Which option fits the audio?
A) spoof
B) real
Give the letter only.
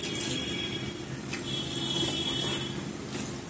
B